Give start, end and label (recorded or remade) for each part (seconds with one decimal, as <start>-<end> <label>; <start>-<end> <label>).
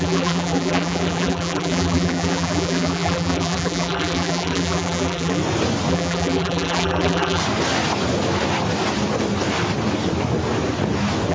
0.0-5.4 remade; 5.4-5.9 recorded; 5.9-7.4 remade; 7.4-11.3 recorded